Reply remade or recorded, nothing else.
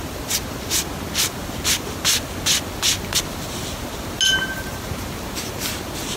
recorded